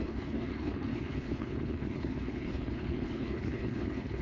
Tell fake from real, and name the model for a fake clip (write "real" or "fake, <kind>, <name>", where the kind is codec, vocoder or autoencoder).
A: fake, codec, HILCodec